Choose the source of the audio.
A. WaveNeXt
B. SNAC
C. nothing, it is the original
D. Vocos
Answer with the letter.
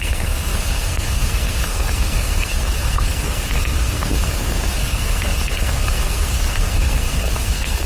B